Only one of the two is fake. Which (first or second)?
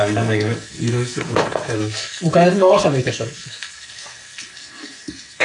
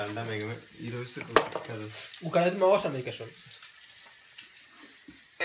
first